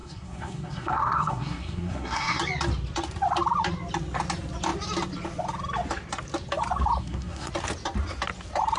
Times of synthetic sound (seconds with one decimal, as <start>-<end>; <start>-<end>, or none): 0.0-2.4; 7.0-7.5